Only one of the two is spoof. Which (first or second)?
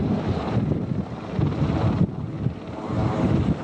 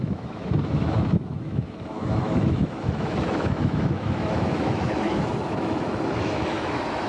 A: second